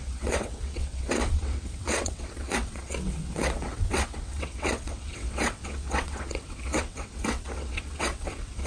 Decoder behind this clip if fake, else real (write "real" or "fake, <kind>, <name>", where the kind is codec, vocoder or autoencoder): fake, vocoder, WaveNeXt